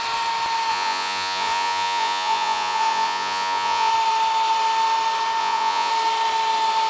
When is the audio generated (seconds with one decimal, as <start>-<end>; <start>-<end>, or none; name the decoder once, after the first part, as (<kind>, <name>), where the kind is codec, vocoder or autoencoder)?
0.7-3.9 (vocoder, Vocos); 5.4-5.9